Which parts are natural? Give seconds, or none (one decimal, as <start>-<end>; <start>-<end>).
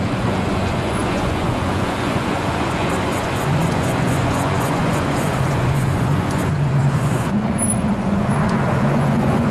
none